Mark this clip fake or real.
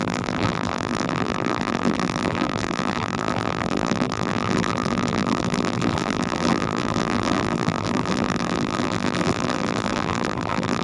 fake